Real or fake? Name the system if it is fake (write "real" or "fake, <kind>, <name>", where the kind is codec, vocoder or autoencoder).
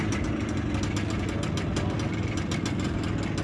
real